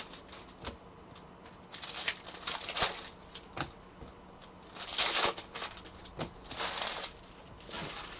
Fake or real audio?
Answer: real